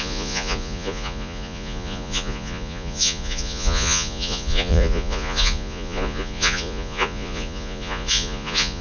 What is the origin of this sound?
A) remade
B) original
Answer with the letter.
A